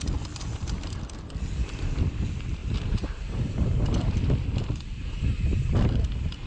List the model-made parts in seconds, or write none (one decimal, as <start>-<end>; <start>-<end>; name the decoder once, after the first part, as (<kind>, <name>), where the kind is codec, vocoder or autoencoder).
2.6-4.0 (vocoder, BigVGAN v2)